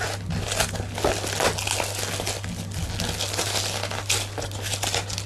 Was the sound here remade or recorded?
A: recorded